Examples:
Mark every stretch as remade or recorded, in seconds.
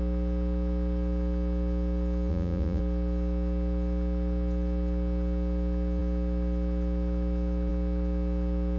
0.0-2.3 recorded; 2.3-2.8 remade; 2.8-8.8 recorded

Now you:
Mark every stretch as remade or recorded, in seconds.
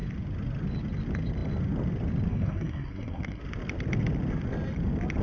0.0-2.3 recorded; 2.3-3.4 remade; 3.4-5.2 recorded